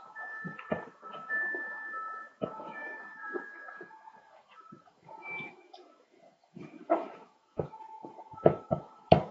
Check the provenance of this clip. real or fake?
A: fake